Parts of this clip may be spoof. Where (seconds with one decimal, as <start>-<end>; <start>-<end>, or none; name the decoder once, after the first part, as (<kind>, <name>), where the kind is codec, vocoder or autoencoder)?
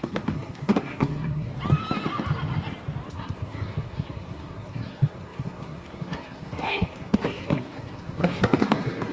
0.0-1.5 (codec, SNAC); 3.1-9.1